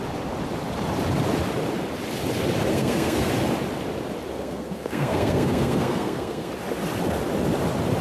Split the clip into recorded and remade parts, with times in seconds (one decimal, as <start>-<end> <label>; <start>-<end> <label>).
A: 0.0-2.7 recorded; 2.7-3.3 remade; 3.3-4.3 recorded; 4.3-6.5 remade; 6.5-8.0 recorded